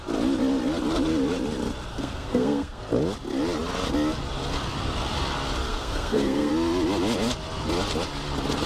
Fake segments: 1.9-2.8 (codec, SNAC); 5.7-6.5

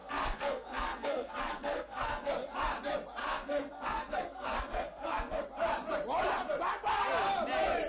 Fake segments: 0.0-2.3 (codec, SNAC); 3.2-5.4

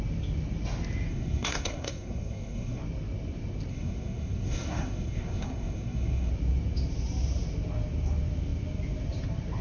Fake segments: 1.1-2.8 (codec, SNAC); 3.7-6.3

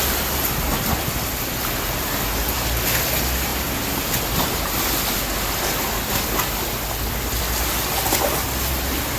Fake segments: none

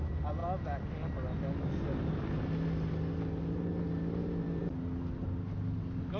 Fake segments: none